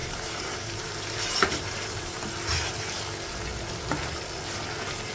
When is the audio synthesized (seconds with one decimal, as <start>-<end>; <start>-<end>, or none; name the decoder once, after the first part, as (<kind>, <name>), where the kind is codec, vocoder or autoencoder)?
0.0-2.7 (vocoder, BigVGAN v2)